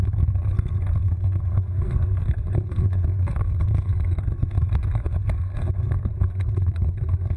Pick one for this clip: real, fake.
fake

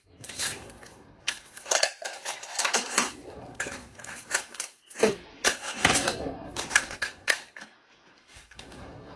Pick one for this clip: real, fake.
fake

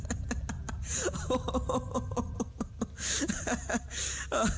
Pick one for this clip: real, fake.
real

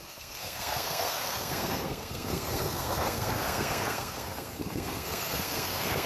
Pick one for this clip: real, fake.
fake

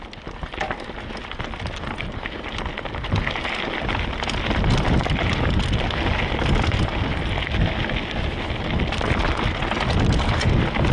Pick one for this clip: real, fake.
real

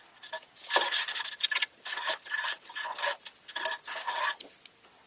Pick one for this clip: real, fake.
real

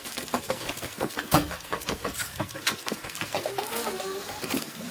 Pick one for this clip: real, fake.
fake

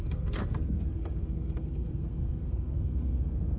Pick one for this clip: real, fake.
fake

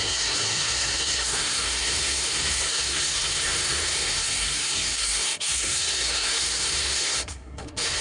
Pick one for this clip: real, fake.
fake